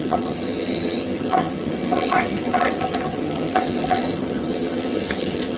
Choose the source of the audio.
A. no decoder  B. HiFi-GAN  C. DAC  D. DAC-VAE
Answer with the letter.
B